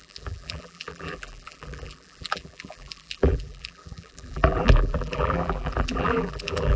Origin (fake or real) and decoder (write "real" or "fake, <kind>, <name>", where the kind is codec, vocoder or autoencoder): fake, vocoder, BigVGAN v2